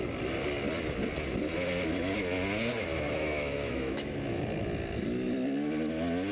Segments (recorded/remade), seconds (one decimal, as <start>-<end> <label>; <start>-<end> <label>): 0.0-2.9 recorded; 2.9-4.4 remade; 4.4-6.3 recorded